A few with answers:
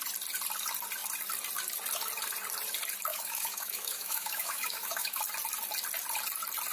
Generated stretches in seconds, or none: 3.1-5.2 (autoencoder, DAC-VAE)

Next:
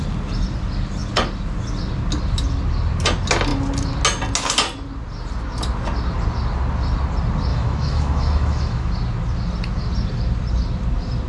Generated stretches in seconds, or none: 7.5-8.9 (autoencoder, DAC-VAE)

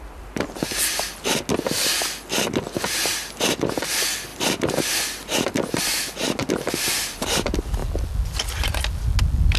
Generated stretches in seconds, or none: none